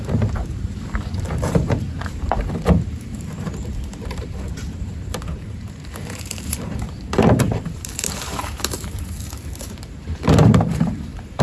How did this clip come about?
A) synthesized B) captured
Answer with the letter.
A